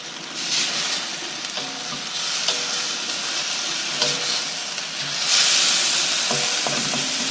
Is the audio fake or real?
real